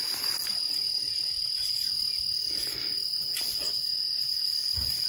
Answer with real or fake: real